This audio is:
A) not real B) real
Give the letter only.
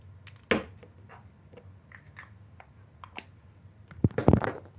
B